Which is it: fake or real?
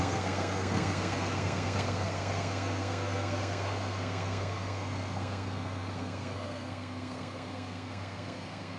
fake